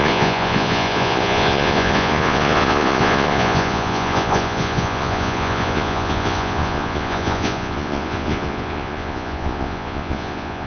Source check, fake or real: fake